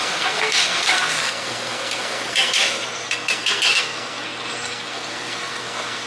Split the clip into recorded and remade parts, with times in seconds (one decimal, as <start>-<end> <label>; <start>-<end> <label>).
0.0-6.1 remade